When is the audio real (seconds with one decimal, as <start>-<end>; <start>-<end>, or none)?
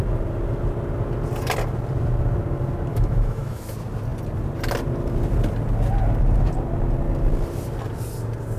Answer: 0.0-2.9; 3.6-8.6